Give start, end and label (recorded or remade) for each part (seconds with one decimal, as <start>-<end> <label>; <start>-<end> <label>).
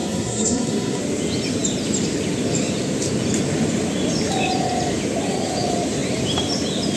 0.0-1.0 remade; 1.0-7.0 recorded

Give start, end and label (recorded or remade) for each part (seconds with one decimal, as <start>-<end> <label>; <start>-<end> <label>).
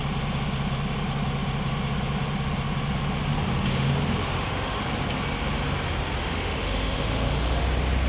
0.0-4.2 recorded; 4.2-4.8 remade; 4.8-6.2 recorded; 6.2-7.6 remade; 7.6-8.1 recorded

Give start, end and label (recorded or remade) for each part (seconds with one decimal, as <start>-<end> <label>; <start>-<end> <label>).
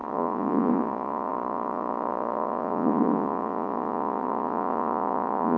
0.0-5.6 remade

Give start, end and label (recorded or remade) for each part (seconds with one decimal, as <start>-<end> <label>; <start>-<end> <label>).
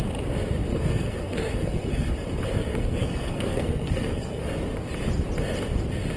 0.0-0.7 recorded; 0.7-2.1 remade; 2.1-2.7 recorded; 2.7-4.5 remade; 4.5-6.2 recorded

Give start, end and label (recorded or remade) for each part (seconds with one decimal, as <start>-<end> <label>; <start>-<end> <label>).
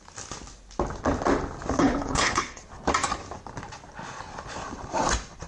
0.0-1.8 recorded; 1.8-2.6 remade; 2.6-5.5 recorded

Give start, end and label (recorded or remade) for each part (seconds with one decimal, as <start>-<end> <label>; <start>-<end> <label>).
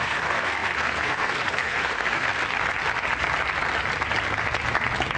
0.0-2.4 remade; 2.4-5.2 recorded